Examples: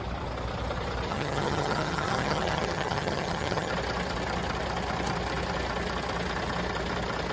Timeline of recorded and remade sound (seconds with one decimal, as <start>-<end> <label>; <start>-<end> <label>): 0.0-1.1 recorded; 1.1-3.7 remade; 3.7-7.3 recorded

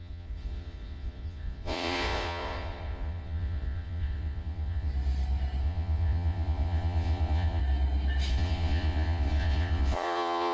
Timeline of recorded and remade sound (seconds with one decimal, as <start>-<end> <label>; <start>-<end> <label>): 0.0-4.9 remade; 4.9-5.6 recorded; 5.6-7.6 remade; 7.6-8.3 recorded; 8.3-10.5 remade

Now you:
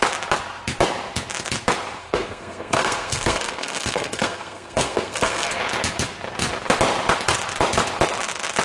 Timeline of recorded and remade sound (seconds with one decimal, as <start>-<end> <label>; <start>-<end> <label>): 0.0-2.0 recorded; 2.0-5.6 remade; 5.6-8.6 recorded

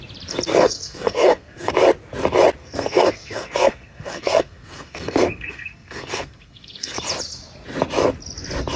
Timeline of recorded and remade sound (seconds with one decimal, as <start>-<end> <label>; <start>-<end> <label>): 0.0-0.5 recorded; 0.5-1.7 remade; 1.7-2.6 recorded; 2.6-7.0 remade; 7.0-8.8 recorded

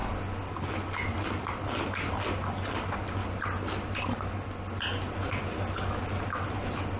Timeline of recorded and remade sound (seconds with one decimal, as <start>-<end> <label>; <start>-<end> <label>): 0.0-7.0 recorded

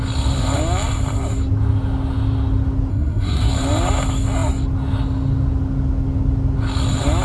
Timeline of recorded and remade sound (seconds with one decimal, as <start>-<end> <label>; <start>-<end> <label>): 0.0-2.9 recorded; 2.9-3.5 remade; 3.5-7.2 recorded

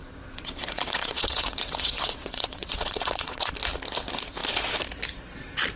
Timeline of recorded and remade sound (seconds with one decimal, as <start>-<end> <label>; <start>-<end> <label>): 0.0-3.5 remade; 3.5-5.8 recorded

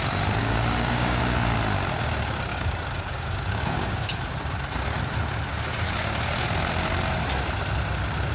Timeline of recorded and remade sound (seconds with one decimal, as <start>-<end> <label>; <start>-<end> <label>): 0.0-0.4 recorded; 0.4-1.2 remade; 1.2-2.5 recorded; 2.5-4.2 remade; 4.2-8.3 recorded